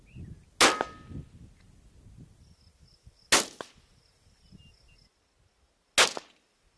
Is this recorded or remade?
recorded